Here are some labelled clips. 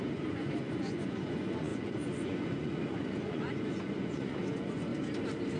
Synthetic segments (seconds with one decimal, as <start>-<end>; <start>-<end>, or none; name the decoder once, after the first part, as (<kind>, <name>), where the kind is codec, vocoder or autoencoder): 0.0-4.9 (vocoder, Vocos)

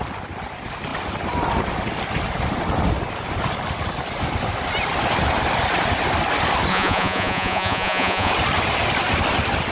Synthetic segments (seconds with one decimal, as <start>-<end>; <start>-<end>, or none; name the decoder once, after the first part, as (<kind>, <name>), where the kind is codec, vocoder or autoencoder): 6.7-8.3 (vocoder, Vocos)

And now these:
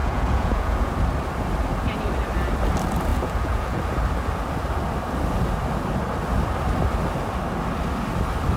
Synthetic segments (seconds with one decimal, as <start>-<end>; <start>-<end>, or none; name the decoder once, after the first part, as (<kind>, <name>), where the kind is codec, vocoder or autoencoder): 0.0-0.9 (vocoder, Vocos); 3.1-3.8

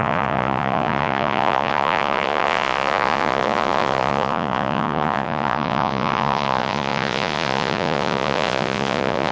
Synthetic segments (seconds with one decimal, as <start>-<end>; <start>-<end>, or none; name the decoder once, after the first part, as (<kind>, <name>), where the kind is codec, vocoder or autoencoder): 0.0-9.3 (vocoder, Vocos)

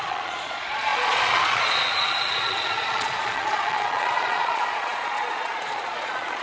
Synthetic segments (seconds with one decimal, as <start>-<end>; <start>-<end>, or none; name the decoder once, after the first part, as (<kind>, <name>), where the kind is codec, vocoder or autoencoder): 0.0-6.4 (vocoder, Vocos)